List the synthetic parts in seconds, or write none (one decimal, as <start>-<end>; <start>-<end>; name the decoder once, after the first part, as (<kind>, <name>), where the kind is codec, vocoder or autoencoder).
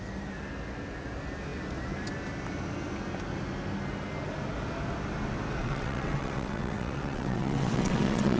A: 5.6-8.4 (vocoder, WaveNeXt)